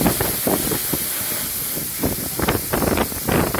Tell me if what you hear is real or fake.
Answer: real